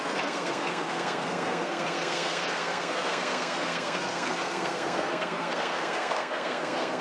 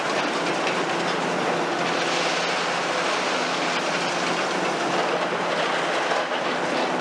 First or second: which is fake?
first